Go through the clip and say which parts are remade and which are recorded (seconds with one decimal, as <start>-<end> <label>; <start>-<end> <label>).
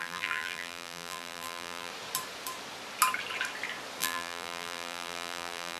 0.0-1.9 remade; 1.9-4.0 recorded; 4.0-5.8 remade